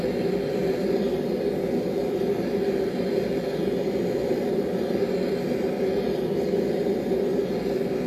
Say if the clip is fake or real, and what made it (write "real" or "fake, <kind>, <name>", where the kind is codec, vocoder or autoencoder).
real